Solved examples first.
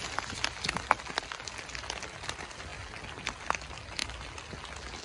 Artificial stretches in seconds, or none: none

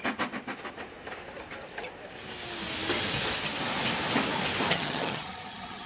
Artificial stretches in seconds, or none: 4.7-5.9 (vocoder, HiFi-GAN)

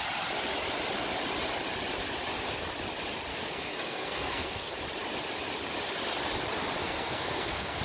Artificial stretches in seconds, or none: 3.3-4.7 (codec, SNAC); 6.8-7.8

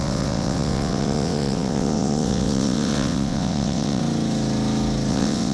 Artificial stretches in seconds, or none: 0.0-4.0 (vocoder, WaveNeXt); 5.1-5.5

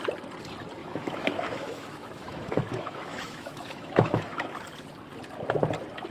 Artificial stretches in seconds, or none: 0.8-4.5 (autoencoder, DAC-VAE)

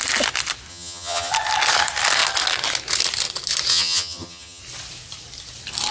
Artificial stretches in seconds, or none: 0.7-1.3 (vocoder, HiFi-GAN); 3.7-4.6

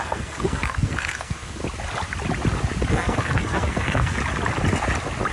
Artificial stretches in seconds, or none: 0.0-1.6 (codec, SNAC); 2.9-4.2

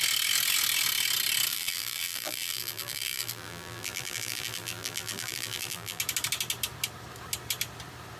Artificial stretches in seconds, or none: 1.5-6.0 (vocoder, BigVGAN v2)